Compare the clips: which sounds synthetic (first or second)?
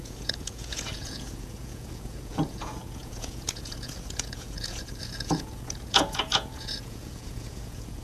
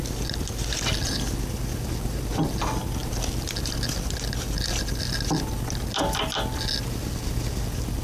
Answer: first